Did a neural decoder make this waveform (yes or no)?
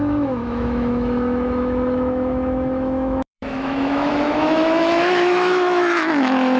yes